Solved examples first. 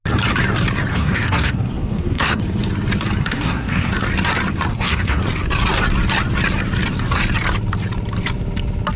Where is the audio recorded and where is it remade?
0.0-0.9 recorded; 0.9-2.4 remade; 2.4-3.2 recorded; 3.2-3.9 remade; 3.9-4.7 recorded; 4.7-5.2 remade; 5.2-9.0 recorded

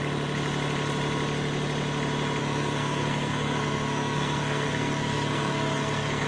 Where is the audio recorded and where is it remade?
0.0-2.4 recorded; 2.4-6.3 remade

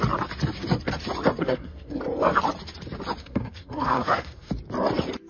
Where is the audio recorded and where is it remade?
0.0-1.4 recorded; 1.4-2.0 remade; 2.0-3.2 recorded; 3.2-4.5 remade; 4.5-5.3 recorded

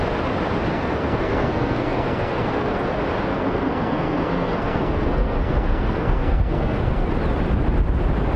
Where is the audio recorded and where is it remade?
0.0-0.7 recorded; 0.7-2.9 remade; 2.9-3.3 recorded; 3.3-7.1 remade; 7.1-8.4 recorded

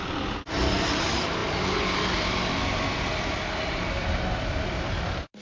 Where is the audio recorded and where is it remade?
0.0-5.4 recorded

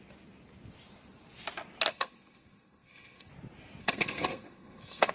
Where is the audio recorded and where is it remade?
0.0-1.9 recorded; 1.9-3.3 remade; 3.3-3.8 recorded; 3.8-5.1 remade

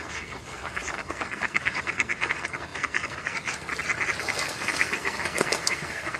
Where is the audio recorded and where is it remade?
0.0-3.7 remade; 3.7-4.2 recorded; 4.2-6.2 remade

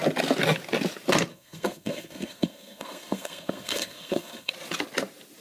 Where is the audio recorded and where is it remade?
0.0-1.3 recorded; 1.3-4.5 remade; 4.5-5.4 recorded